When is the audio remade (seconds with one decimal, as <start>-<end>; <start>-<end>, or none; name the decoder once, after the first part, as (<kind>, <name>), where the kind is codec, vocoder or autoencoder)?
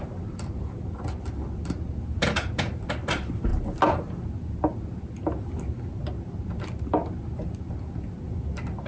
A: none